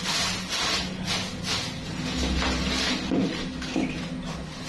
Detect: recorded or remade recorded